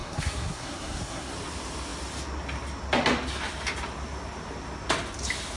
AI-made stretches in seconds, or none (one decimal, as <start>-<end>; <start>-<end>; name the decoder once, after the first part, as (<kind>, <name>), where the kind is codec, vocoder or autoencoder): 0.0-1.3 (codec, SNAC)